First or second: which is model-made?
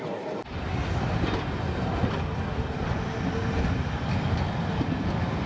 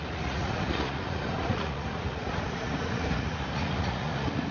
second